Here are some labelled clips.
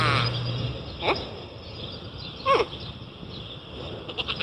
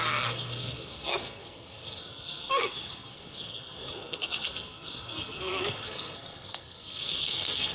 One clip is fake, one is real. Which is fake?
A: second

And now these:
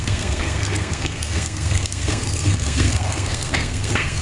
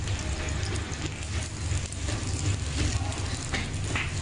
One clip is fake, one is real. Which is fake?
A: first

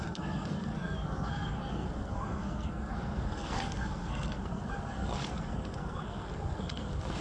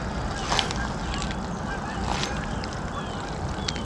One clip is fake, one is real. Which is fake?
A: first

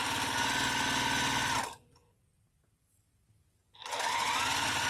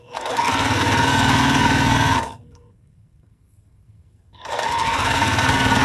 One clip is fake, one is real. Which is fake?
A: second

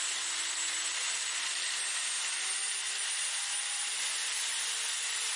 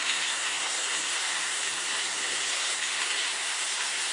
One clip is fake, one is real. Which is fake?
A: second